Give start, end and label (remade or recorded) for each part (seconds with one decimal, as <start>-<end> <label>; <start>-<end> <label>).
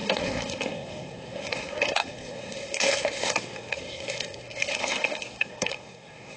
0.0-6.4 remade